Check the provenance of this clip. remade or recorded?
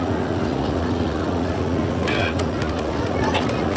remade